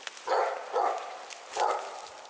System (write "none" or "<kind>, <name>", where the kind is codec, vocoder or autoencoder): none